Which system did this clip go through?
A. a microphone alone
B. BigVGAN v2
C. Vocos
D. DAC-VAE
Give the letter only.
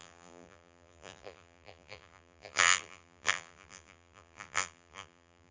B